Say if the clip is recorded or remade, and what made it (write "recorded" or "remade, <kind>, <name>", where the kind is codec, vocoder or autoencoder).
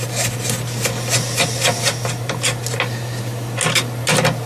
recorded